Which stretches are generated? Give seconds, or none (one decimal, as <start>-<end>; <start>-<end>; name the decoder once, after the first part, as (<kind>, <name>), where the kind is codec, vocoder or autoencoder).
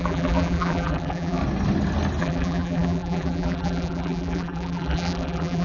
0.0-1.4 (vocoder, BigVGAN v2); 2.2-5.6